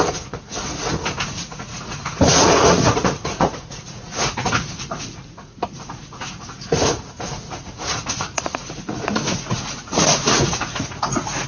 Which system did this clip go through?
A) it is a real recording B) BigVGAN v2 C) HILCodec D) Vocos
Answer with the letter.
D